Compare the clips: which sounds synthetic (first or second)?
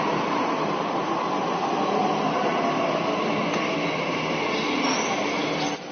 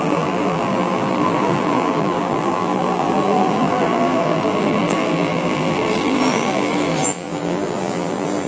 second